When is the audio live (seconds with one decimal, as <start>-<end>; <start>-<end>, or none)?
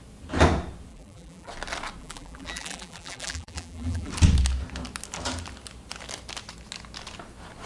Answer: 0.0-0.9; 1.5-2.0; 4.1-7.7